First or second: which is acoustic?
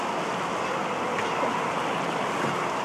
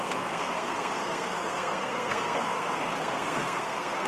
first